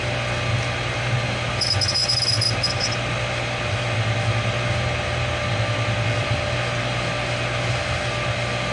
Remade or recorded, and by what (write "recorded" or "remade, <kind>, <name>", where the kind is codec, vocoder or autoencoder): recorded